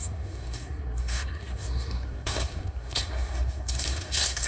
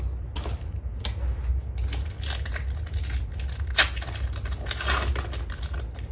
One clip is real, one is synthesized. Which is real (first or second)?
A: second